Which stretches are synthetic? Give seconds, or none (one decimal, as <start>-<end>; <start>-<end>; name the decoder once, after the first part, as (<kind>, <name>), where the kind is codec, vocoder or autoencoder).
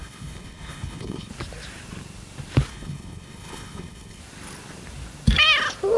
0.0-1.3 (codec, HILCodec); 2.7-4.2